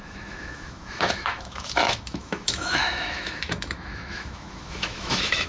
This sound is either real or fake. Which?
fake